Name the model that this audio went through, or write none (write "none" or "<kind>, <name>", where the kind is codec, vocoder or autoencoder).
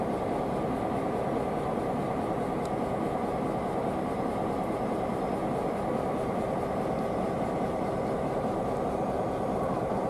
none